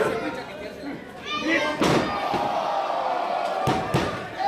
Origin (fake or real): real